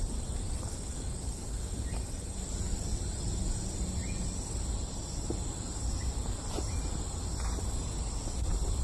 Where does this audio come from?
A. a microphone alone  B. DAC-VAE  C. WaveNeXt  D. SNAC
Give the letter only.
A